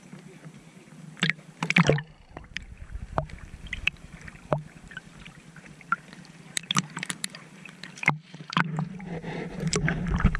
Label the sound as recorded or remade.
remade